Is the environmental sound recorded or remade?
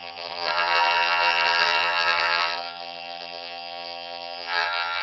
remade